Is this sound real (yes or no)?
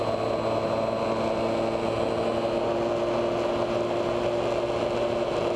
yes